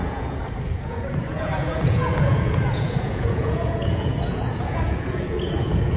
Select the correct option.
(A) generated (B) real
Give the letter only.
A